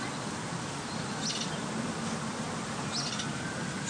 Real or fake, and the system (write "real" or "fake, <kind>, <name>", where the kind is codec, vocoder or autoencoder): real